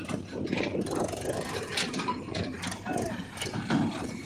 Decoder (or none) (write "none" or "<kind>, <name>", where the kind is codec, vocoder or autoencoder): vocoder, BigVGAN v2